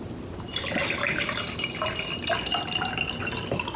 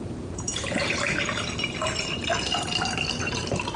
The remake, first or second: second